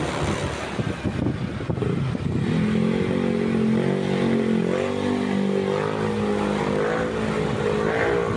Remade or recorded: recorded